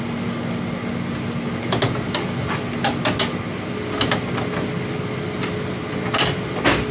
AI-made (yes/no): no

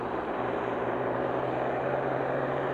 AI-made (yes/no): yes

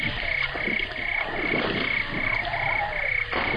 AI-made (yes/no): no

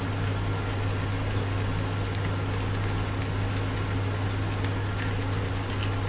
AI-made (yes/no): no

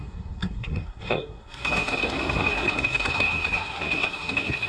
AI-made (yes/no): yes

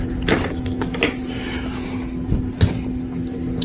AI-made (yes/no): no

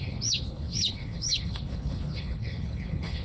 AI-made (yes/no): yes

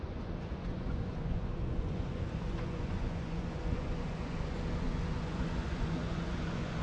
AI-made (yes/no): yes